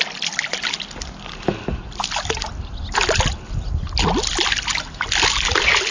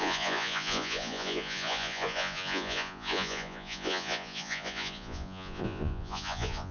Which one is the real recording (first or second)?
first